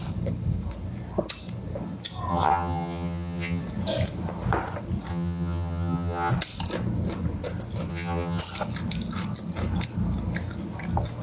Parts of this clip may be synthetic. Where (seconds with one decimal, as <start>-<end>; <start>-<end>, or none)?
2.3-3.6; 5.1-6.3; 7.9-8.4